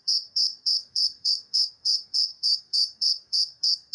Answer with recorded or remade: remade